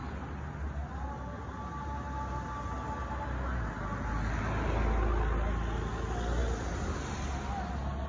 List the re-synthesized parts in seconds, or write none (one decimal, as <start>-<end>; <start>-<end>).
none

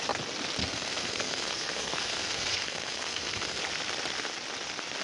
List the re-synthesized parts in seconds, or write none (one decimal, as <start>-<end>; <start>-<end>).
0.6-3.6

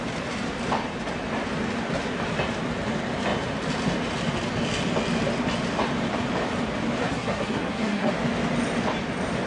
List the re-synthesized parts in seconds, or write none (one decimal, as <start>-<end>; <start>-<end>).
7.0-8.1